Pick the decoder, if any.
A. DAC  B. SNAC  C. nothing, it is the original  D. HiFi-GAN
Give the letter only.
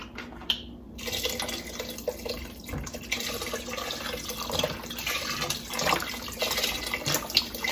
C